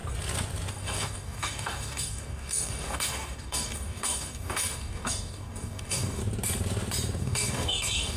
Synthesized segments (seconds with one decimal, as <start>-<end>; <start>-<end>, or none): 0.7-6.2; 7.2-8.2

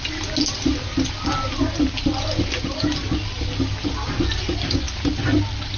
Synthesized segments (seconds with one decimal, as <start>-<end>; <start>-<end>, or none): none

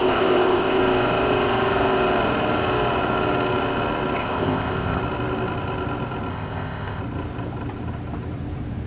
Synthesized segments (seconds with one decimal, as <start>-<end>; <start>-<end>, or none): 0.0-0.8; 4.2-5.0; 6.3-7.0

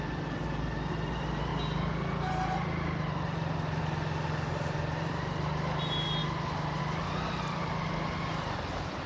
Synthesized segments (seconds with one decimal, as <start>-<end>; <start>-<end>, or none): none

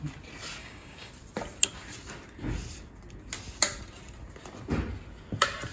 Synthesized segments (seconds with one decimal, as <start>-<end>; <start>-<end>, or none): 0.6-1.1